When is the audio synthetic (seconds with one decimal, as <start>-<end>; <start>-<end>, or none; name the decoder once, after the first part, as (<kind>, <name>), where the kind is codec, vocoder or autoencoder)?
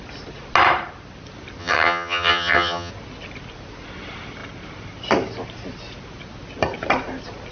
1.6-2.9 (vocoder, HiFi-GAN)